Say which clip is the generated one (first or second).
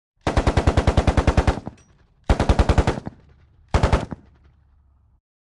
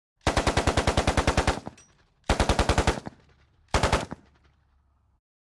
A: first